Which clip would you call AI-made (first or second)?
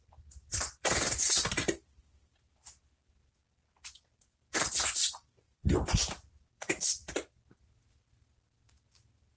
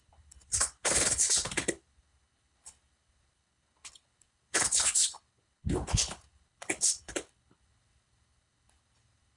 second